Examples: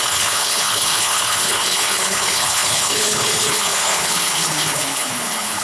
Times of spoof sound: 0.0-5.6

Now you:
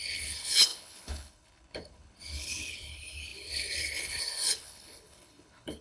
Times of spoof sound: 0.0-5.8

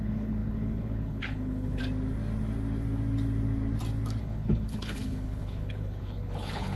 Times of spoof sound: 0.0-1.8; 4.2-6.8

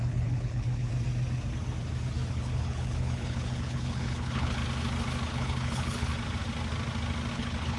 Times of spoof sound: 0.0-0.9; 2.3-4.6; 5.3-6.1; 7.3-7.8

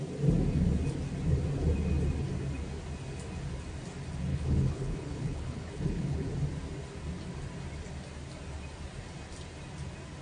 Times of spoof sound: 4.3-6.3